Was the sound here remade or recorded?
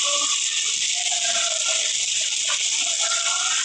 recorded